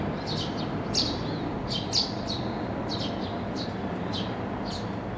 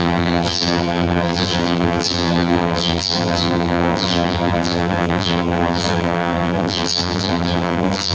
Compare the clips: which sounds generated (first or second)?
second